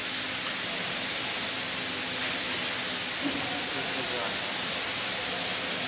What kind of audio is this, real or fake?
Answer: real